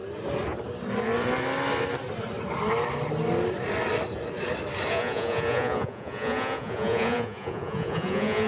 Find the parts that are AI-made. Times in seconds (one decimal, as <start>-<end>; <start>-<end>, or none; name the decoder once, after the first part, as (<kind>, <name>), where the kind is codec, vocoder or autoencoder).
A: 4.9-8.5 (vocoder, Vocos)